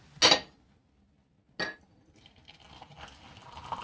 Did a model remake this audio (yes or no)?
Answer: no